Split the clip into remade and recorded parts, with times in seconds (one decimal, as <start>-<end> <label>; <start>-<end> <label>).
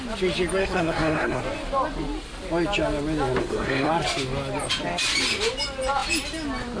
0.0-0.6 recorded; 0.6-1.4 remade; 1.4-3.4 recorded; 3.4-3.9 remade; 3.9-6.8 recorded